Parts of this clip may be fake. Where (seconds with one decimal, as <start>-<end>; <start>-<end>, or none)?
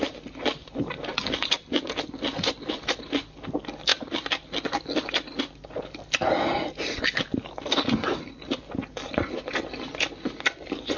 none